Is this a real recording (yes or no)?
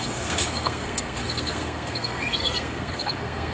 no